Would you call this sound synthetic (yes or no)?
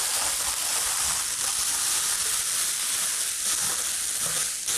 no